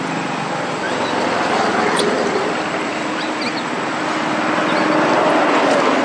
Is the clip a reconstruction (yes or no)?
no